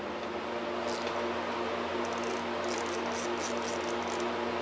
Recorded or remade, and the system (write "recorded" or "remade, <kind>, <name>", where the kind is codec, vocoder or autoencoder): recorded